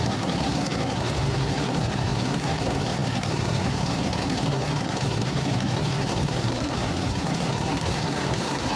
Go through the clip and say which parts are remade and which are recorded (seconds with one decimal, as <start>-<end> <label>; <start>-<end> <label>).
0.0-8.8 remade